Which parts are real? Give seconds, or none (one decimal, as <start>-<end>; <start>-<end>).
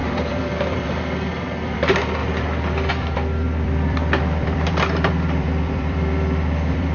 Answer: 2.2-2.9